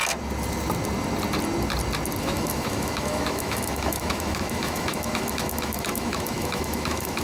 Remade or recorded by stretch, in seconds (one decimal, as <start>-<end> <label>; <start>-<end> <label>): 0.0-2.2 recorded; 2.2-7.2 remade

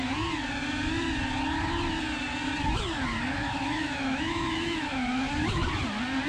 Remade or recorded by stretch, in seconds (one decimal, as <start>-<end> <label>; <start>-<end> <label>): 0.0-3.4 recorded; 3.4-5.7 remade; 5.7-6.3 recorded

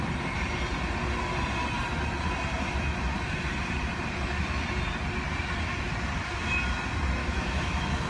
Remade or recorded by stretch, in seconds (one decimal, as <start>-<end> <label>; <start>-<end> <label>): 0.0-7.2 recorded; 7.2-8.1 remade

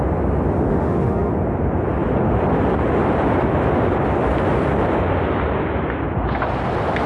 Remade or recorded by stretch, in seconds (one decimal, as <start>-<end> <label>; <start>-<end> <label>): 0.0-0.7 recorded; 0.7-1.3 remade; 1.3-7.1 recorded

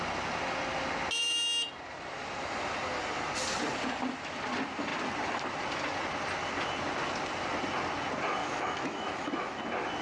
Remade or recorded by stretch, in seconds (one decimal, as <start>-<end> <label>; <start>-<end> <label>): 0.0-8.4 recorded; 8.4-9.6 remade; 9.6-10.0 recorded

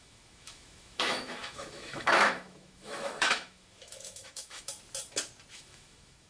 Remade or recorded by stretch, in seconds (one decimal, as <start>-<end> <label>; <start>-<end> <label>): 0.0-4.7 remade; 4.7-5.5 recorded; 5.5-6.3 remade

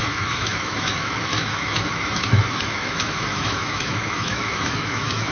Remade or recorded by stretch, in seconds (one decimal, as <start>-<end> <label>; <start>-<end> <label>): 0.0-5.3 remade

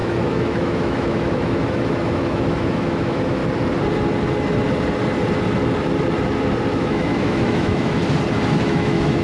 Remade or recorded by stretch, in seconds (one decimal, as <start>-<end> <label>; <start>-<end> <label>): 0.0-3.4 remade; 3.4-6.7 recorded; 6.7-8.0 remade; 8.0-8.6 recorded; 8.6-9.2 remade